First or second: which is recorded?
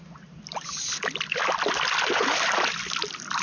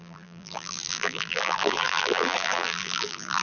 first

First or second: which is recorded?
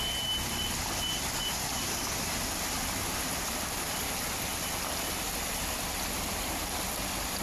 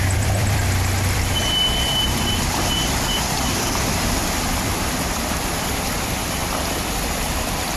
first